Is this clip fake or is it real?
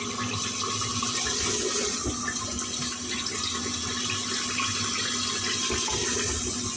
real